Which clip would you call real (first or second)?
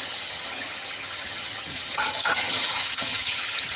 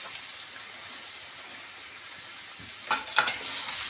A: second